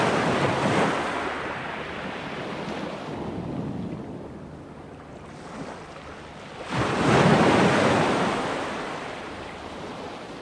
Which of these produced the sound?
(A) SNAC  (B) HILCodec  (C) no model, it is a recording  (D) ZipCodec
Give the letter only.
C